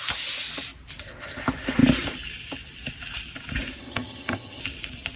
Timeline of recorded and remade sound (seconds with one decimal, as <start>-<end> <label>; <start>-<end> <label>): 0.0-3.8 recorded; 3.8-4.6 remade; 4.6-5.2 recorded